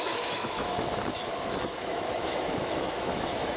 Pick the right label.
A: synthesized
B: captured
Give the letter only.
A